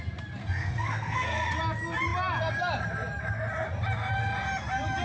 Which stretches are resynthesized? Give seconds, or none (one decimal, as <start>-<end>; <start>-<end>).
0.4-1.5